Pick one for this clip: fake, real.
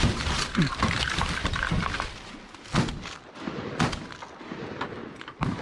real